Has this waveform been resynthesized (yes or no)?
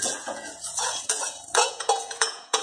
yes